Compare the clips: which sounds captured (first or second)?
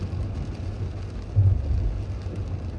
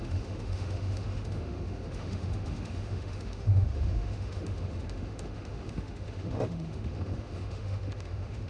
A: first